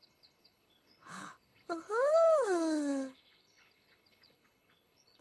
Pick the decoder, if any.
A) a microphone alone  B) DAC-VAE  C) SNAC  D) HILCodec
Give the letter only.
D